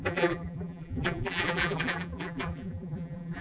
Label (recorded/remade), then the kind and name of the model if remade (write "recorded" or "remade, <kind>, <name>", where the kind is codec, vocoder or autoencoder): remade, vocoder, BigVGAN v2